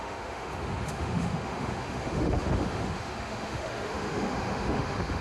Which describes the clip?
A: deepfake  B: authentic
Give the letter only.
A